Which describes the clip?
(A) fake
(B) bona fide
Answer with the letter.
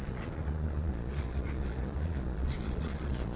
A